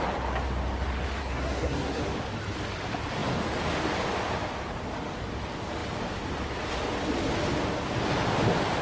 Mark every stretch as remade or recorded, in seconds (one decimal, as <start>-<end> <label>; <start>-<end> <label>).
0.0-1.2 recorded; 1.2-2.0 remade; 2.0-8.8 recorded